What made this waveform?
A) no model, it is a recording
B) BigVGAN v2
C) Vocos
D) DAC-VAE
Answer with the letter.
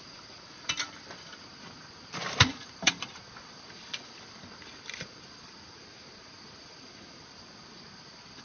B